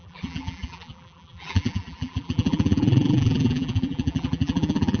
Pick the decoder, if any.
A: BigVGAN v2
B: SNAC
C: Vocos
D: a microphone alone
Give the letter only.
A